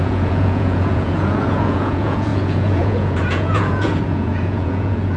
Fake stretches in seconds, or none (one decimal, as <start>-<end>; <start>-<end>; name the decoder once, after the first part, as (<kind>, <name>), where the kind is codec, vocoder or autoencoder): 0.0-5.2 (vocoder, Vocos)